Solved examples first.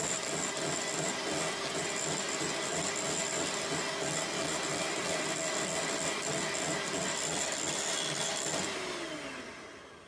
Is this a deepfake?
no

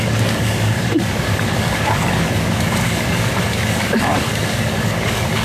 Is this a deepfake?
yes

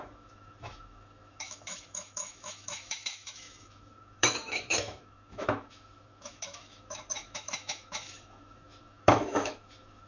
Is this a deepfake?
yes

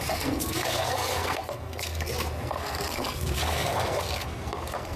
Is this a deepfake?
yes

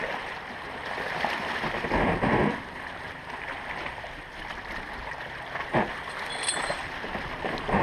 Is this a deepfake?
yes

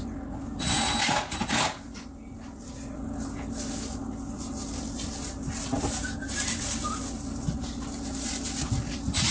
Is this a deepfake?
no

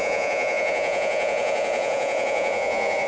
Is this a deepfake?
yes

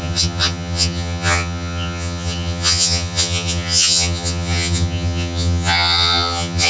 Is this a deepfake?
yes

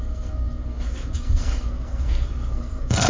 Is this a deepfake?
yes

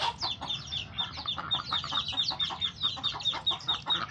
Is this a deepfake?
no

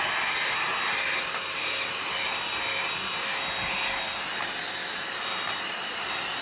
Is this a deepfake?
no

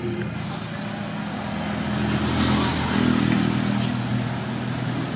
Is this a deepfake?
no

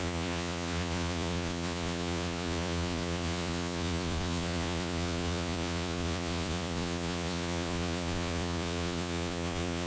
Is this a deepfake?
yes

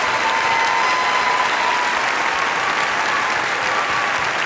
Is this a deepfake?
no